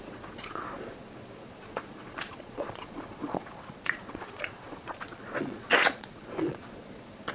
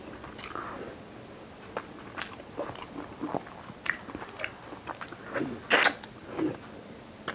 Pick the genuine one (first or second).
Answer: second